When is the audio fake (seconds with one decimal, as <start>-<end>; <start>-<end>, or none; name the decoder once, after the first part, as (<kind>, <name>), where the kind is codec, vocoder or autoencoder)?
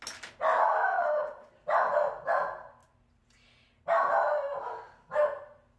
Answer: 0.9-1.5 (vocoder, WaveNeXt)